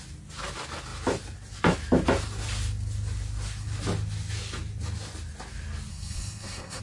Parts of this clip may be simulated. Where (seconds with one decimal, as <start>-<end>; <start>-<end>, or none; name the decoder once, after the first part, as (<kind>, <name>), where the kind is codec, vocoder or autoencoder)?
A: 5.9-6.8 (codec, SNAC)